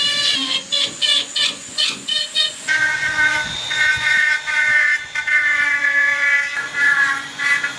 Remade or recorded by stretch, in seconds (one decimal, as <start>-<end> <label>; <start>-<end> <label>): 0.0-7.8 remade